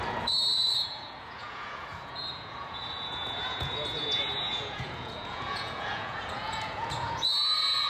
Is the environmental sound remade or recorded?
remade